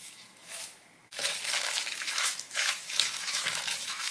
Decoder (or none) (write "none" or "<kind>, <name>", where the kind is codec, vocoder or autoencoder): autoencoder, DAC-VAE